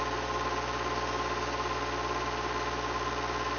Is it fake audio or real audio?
real